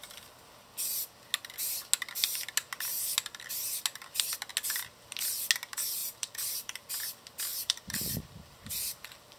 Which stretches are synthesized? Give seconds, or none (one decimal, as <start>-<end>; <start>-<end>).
6.0-6.9; 7.5-9.4

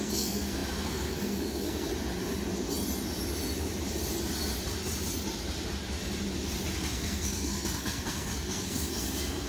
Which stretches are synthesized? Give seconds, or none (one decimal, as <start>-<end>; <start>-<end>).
0.0-1.9; 6.8-9.5